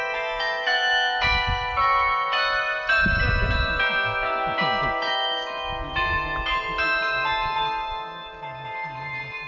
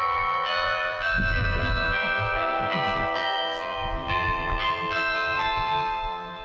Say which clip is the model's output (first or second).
second